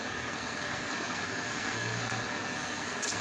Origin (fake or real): fake